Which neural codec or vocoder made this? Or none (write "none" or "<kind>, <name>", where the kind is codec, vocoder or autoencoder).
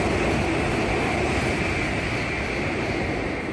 none